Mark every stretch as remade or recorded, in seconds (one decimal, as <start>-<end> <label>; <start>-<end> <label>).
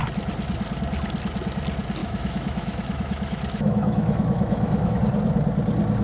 0.0-2.0 recorded; 2.0-5.0 remade; 5.0-6.0 recorded